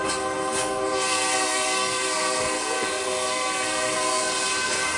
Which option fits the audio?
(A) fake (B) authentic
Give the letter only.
A